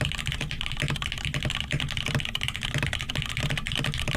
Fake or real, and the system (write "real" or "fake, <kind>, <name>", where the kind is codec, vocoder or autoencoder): real